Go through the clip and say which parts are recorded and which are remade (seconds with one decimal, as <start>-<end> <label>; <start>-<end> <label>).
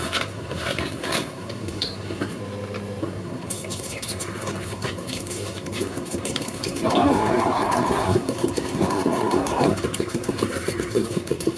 0.0-2.4 remade; 2.4-3.0 recorded; 3.0-11.6 remade